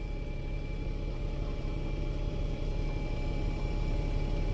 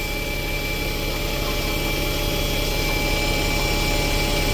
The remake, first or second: first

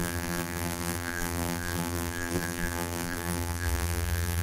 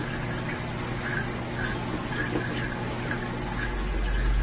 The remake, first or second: first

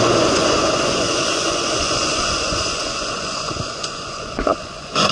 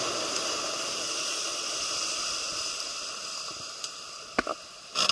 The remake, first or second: first